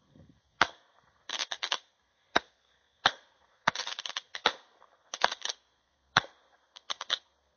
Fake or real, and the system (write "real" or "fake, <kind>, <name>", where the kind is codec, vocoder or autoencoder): fake, codec, SNAC